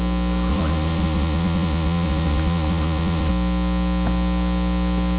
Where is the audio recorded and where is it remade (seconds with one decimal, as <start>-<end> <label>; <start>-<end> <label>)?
0.0-0.5 recorded; 0.5-3.3 remade; 3.3-5.2 recorded